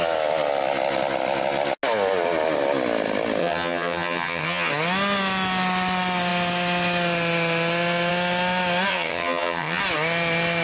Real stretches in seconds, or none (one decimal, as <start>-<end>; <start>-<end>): 0.0-3.4; 4.7-8.9; 9.8-10.6